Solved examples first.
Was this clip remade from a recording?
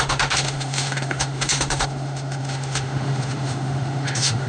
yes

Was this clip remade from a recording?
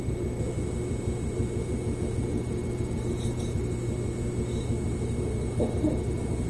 no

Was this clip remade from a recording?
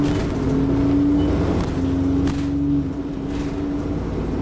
no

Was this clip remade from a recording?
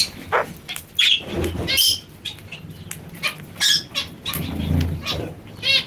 no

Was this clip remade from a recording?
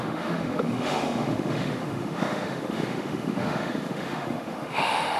yes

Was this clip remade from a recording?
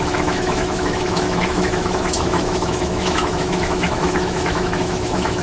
yes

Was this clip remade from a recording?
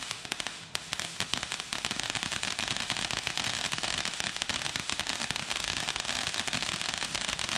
yes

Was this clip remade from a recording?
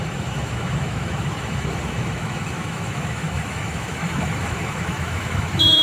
yes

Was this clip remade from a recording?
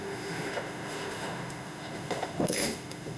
yes